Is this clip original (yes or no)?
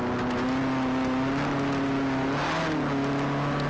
yes